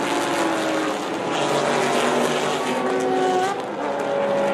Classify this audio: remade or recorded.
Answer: recorded